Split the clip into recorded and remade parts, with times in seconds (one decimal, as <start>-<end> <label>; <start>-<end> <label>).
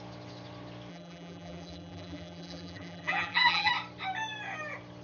0.0-0.9 recorded; 0.9-3.7 remade; 3.7-5.0 recorded